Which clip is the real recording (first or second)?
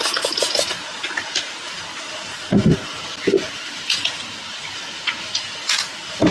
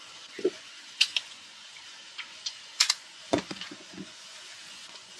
first